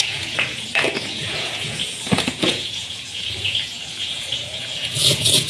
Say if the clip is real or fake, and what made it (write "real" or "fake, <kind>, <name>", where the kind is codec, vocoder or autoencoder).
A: fake, vocoder, Vocos